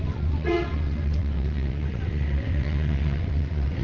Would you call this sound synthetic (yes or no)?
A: yes